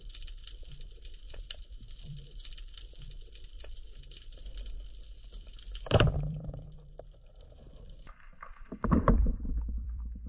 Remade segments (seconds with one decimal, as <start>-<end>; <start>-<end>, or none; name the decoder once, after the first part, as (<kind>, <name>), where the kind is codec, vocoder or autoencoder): 0.0-5.5 (vocoder, BigVGAN v2); 6.3-10.3